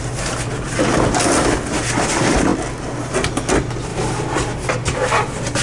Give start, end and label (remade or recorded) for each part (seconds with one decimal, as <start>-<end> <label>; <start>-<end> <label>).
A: 0.0-5.6 recorded

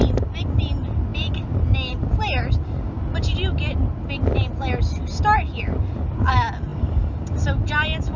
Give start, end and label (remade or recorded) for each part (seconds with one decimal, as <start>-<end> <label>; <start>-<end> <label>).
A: 0.0-8.2 recorded

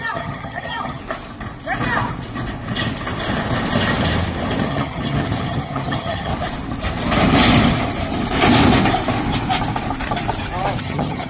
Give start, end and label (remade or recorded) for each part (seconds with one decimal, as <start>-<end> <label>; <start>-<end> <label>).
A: 0.0-1.0 remade; 1.0-4.6 recorded; 4.6-6.3 remade; 6.3-10.8 recorded; 10.8-11.3 remade

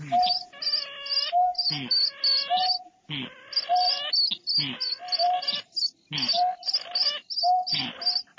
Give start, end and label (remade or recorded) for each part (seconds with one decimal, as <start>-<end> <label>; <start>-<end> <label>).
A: 0.0-8.4 recorded

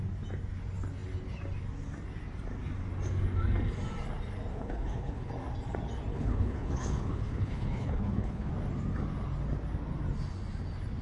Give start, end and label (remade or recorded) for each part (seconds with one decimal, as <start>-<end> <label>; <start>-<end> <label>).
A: 0.0-4.5 recorded; 4.5-5.3 remade; 5.3-6.1 recorded; 6.1-8.5 remade; 8.5-11.0 recorded